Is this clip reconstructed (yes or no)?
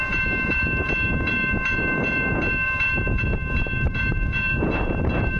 yes